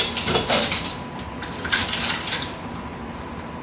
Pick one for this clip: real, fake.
real